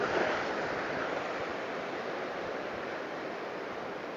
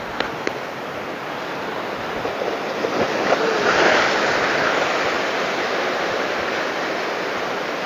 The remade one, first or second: first